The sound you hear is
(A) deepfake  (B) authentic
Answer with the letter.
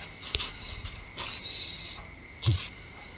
B